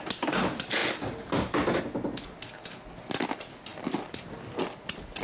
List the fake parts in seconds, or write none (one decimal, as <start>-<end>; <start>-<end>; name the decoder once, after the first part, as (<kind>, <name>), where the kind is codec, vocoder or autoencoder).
none